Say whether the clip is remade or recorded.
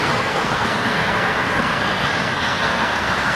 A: remade